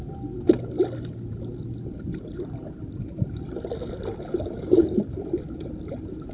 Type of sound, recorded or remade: recorded